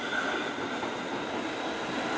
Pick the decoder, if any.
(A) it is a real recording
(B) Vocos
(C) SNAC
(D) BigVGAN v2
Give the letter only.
A